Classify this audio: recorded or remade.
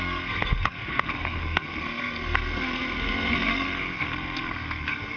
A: remade